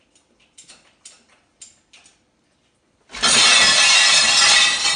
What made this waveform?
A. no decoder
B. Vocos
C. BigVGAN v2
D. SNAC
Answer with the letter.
A